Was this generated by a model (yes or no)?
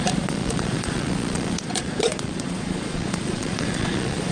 yes